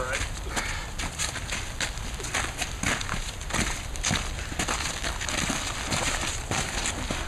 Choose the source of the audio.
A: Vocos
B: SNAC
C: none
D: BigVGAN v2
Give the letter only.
C